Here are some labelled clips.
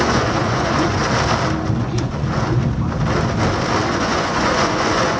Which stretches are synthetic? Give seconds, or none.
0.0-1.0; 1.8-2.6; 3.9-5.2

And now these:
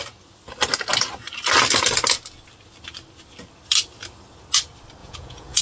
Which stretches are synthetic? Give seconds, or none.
5.0-5.6

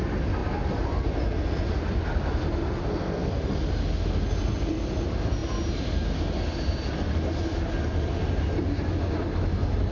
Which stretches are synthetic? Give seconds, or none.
2.8-3.3

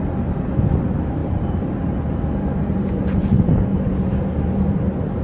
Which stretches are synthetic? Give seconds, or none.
1.2-1.7; 2.5-4.3

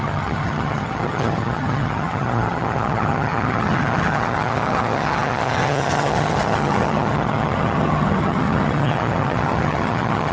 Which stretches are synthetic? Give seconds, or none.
0.0-10.3

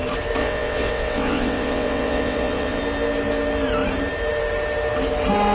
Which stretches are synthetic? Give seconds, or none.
0.4-2.8

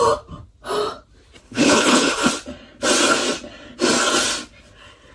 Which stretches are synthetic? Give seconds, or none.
1.4-2.3

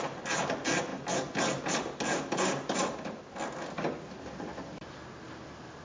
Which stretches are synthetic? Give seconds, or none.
none